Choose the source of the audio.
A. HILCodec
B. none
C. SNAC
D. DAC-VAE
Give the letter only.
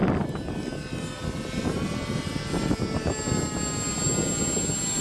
B